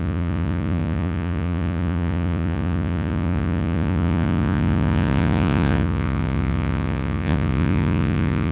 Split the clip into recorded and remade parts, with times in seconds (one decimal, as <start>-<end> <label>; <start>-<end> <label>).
0.0-8.5 remade